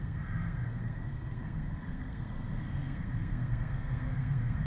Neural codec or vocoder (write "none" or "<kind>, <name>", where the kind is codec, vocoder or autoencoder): codec, SNAC